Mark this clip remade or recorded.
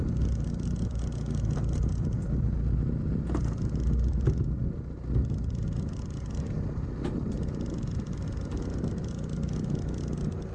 recorded